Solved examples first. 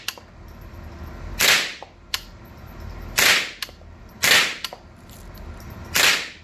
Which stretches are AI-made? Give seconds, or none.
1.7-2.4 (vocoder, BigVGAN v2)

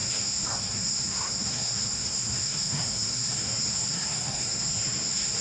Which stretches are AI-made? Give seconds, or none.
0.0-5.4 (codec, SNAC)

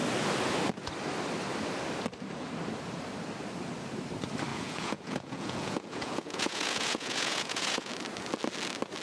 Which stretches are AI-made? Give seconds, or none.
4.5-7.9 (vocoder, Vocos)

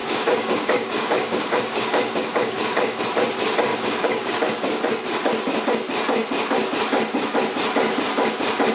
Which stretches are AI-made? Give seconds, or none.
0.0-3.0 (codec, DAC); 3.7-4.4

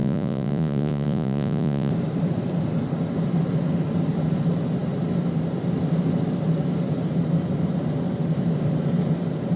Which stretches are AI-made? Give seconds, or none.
0.0-1.9 (vocoder, Vocos)